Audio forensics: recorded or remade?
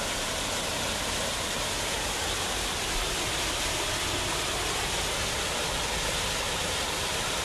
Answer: recorded